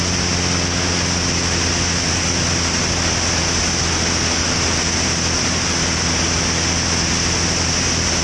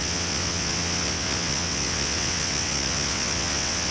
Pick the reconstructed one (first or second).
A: second